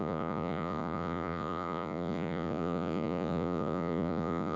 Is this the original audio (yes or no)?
no